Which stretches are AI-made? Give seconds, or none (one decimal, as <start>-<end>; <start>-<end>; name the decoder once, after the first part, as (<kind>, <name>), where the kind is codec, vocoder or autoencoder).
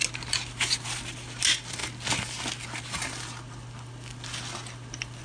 none